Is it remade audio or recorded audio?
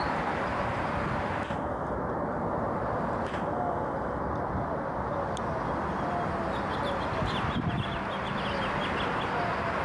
recorded